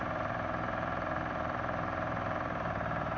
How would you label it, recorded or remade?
remade